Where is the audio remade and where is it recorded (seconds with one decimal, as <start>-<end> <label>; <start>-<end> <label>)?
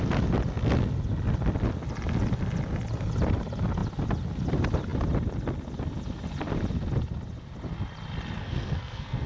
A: 0.0-8.4 recorded; 8.4-9.3 remade